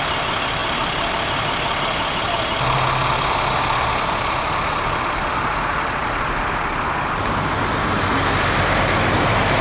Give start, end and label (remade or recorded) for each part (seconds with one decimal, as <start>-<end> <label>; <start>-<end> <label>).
0.0-9.6 recorded